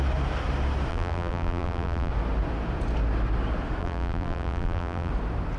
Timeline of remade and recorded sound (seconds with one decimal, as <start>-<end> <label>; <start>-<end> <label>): 0.0-0.9 recorded; 0.9-2.1 remade; 2.1-3.8 recorded; 3.8-5.1 remade; 5.1-5.6 recorded